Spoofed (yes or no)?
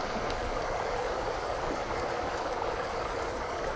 yes